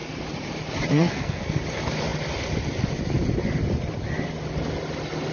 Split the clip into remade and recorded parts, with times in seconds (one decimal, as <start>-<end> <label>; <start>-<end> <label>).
0.0-0.9 recorded; 0.9-1.6 remade; 1.6-5.3 recorded